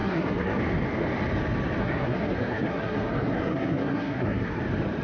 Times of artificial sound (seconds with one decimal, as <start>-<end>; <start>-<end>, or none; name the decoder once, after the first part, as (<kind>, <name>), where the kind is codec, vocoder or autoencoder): 0.0-0.6 (codec, SNAC); 1.8-4.6